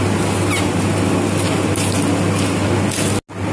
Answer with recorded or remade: recorded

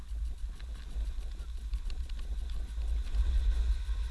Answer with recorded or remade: recorded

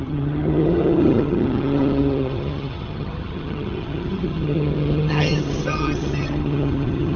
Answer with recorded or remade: remade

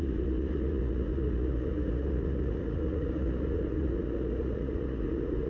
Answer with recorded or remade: remade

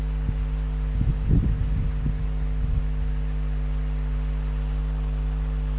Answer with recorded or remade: recorded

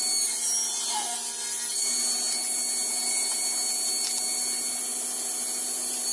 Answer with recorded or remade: recorded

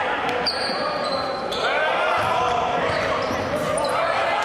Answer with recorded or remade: recorded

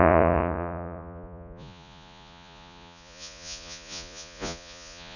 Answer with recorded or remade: remade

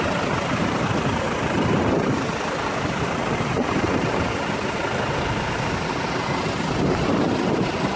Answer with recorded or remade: recorded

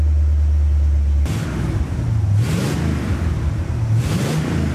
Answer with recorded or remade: recorded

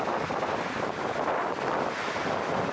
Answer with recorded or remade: remade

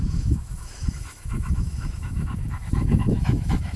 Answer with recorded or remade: remade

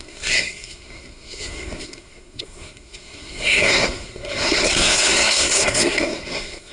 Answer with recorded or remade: remade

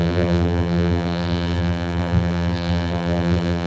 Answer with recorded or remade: remade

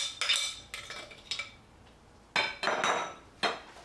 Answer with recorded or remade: recorded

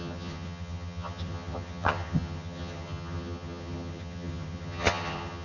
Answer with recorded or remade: remade